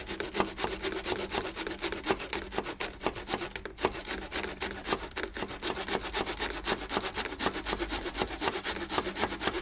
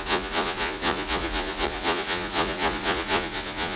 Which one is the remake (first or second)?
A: second